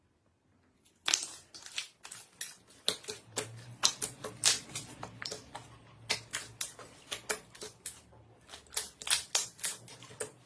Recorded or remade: recorded